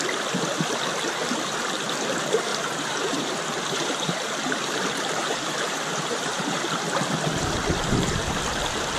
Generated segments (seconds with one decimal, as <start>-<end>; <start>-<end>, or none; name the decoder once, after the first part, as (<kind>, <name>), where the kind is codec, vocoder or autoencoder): 2.5-6.8 (vocoder, BigVGAN v2)